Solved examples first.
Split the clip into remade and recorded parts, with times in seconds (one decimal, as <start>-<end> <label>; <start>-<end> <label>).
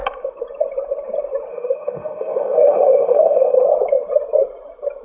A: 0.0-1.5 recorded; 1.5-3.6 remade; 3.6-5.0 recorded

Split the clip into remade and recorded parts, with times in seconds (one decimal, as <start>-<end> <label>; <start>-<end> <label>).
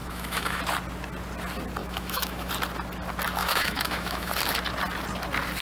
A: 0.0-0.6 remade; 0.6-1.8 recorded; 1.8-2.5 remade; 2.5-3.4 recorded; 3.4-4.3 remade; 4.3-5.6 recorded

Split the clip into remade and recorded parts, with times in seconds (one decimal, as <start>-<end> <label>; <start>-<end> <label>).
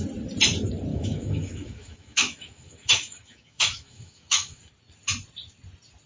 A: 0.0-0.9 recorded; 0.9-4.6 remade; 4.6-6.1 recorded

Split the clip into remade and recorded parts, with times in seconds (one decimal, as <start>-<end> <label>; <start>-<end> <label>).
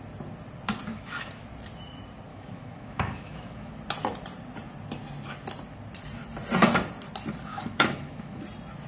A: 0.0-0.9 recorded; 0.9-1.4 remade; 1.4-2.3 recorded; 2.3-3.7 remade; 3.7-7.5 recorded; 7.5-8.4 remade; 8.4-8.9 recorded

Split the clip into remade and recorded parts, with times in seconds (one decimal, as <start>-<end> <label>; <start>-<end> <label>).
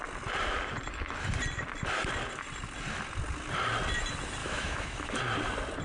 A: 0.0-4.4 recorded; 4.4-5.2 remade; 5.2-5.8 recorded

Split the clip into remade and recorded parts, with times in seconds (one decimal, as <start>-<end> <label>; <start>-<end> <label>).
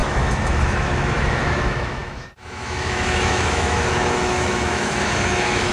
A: 0.0-5.7 remade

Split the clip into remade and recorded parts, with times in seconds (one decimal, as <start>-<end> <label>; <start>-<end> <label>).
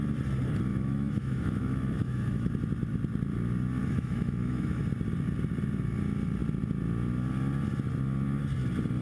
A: 0.0-0.7 recorded; 0.7-2.5 remade; 2.5-3.8 recorded; 3.8-4.8 remade; 4.8-9.0 recorded